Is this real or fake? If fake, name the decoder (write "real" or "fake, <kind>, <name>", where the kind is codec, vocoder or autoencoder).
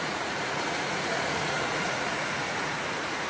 fake, vocoder, Vocos